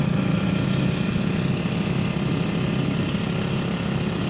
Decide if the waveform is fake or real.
real